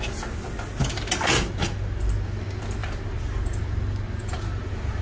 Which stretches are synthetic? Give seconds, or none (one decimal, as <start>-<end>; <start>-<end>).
none

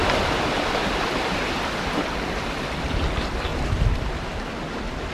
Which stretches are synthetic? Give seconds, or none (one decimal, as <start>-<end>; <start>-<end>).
0.8-2.5; 3.5-4.5

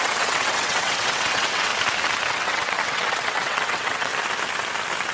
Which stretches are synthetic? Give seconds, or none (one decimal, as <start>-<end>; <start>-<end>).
0.0-1.7; 2.3-4.1

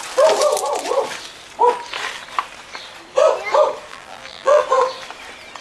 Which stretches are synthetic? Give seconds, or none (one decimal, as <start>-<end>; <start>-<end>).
3.9-4.6